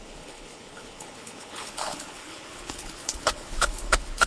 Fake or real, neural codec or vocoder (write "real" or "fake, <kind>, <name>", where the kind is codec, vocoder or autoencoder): fake, codec, HILCodec